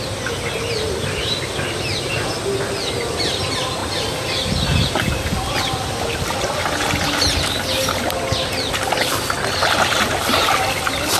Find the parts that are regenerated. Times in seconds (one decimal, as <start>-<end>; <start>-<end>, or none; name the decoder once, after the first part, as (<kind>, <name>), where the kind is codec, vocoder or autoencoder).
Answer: none